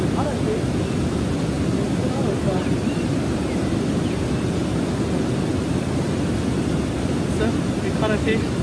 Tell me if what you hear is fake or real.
real